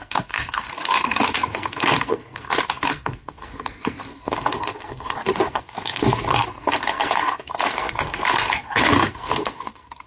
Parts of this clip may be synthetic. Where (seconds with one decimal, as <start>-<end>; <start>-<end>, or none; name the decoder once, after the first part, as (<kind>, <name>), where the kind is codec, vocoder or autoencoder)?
0.0-10.1 (codec, SNAC)